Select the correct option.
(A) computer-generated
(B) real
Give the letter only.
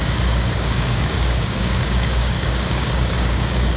A